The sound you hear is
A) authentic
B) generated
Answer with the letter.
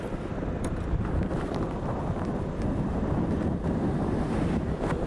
A